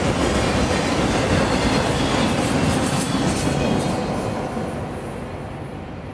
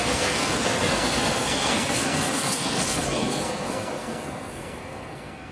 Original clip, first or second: first